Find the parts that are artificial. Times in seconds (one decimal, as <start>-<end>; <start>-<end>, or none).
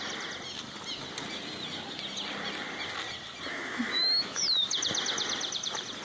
3.5-4.4